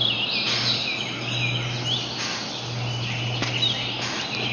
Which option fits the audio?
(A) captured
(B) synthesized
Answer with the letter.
A